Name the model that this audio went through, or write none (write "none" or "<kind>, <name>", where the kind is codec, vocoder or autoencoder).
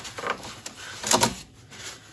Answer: none